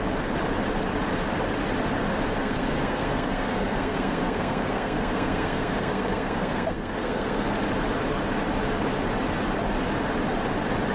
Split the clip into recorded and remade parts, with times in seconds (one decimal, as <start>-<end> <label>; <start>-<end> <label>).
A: 0.0-2.4 recorded; 2.4-7.5 remade; 7.5-10.9 recorded